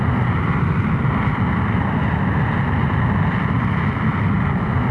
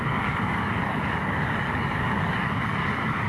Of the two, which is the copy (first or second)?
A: second